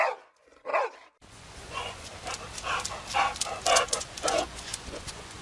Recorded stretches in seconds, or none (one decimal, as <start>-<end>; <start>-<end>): 0.7-1.3; 2.1-3.7